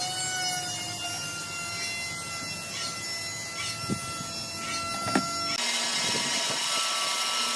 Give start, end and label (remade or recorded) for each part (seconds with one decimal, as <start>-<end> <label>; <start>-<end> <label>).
0.0-7.6 recorded